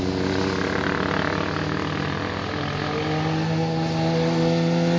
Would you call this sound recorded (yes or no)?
yes